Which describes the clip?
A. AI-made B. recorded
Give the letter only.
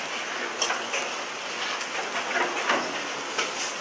B